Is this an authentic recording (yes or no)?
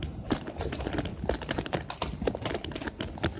yes